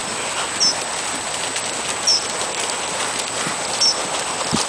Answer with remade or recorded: recorded